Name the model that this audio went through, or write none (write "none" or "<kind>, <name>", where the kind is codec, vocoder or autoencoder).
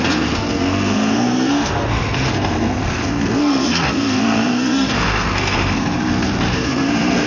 codec, SNAC